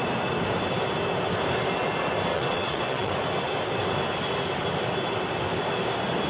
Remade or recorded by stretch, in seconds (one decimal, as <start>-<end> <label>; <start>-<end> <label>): 0.0-2.3 recorded; 2.3-3.1 remade; 3.1-6.3 recorded